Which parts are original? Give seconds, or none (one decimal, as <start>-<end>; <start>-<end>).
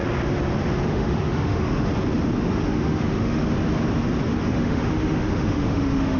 0.0-0.9; 1.9-2.5; 3.4-4.4